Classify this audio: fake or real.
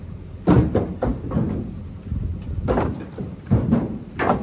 real